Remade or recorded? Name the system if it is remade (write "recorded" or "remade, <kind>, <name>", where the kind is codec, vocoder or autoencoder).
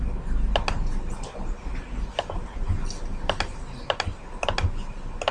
recorded